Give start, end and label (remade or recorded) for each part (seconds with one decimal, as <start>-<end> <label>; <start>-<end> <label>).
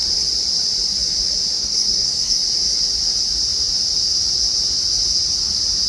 0.0-1.6 recorded; 1.6-2.4 remade; 2.4-5.9 recorded